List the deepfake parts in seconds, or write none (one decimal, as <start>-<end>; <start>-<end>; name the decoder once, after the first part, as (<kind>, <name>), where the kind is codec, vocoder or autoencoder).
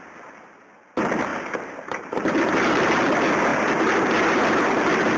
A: 1.3-2.9 (vocoder, BigVGAN v2)